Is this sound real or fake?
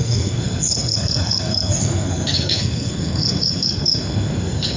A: fake